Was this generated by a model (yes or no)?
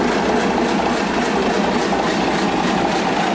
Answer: no